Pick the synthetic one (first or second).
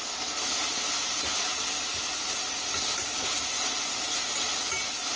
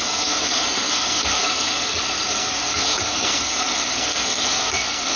second